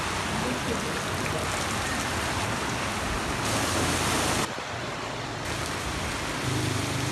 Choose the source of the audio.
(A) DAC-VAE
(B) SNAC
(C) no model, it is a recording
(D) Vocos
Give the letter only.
C